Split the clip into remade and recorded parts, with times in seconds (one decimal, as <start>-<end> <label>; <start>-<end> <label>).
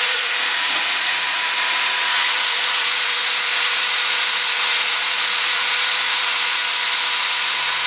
0.0-6.6 remade; 6.6-7.2 recorded; 7.2-7.9 remade